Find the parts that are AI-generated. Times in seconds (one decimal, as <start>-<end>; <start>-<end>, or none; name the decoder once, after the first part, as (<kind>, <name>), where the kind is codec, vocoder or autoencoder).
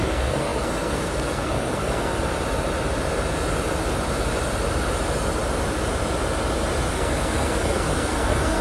0.0-2.1 (codec, SNAC); 6.9-8.6